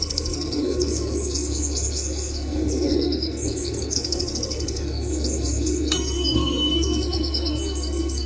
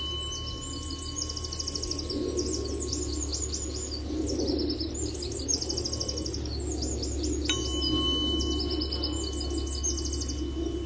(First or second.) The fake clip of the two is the first